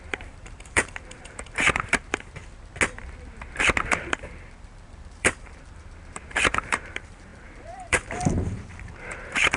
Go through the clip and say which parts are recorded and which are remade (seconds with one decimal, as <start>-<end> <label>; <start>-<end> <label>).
0.0-2.4 remade; 2.4-3.9 recorded; 3.9-9.6 remade